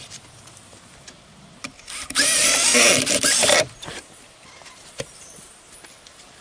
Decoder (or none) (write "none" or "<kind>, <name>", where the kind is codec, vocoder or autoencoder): none